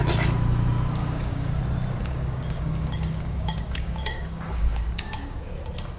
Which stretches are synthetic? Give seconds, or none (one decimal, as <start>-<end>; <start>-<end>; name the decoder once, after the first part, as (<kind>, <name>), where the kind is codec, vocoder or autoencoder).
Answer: 1.0-1.6 (codec, DAC); 2.0-5.6